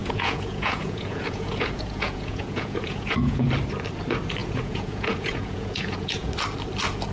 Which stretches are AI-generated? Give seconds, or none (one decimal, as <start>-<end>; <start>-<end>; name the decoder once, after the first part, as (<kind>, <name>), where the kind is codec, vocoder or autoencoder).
0.0-3.5 (vocoder, Vocos); 4.4-6.3